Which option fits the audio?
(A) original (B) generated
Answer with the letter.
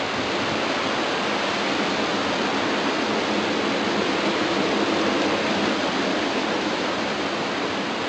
A